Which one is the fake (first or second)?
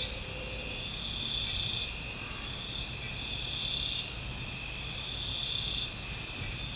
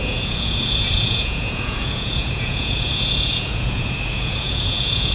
second